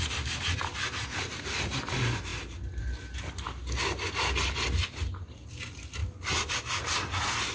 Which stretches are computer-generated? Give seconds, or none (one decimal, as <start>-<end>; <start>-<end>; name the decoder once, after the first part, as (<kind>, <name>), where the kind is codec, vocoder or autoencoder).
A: none